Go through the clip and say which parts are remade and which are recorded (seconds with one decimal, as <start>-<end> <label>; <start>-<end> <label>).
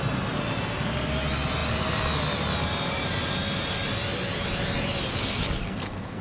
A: 0.0-5.2 recorded; 5.2-6.2 remade